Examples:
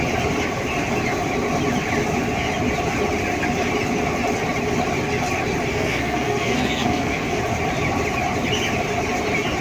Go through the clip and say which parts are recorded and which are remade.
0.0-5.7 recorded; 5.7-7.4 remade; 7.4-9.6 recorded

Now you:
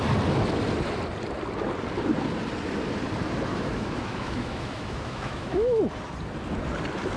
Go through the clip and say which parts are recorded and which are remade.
0.0-3.5 recorded; 3.5-5.8 remade; 5.8-7.2 recorded

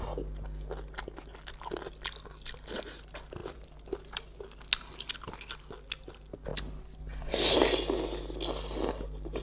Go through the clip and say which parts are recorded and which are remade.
0.0-9.4 recorded

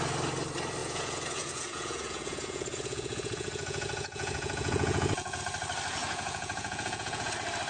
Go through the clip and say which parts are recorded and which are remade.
0.0-0.8 recorded; 0.8-5.4 remade; 5.4-6.0 recorded; 6.0-7.3 remade; 7.3-7.7 recorded

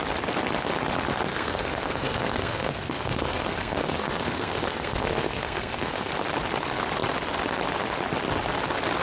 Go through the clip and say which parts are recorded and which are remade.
0.0-1.3 recorded; 1.3-6.1 remade; 6.1-9.0 recorded

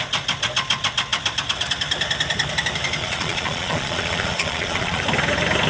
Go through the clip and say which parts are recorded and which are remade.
0.0-3.0 recorded; 3.0-5.0 remade; 5.0-5.7 recorded